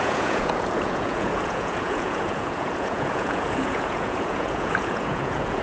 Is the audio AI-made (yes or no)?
yes